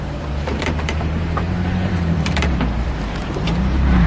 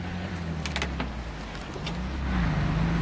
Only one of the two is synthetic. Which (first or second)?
first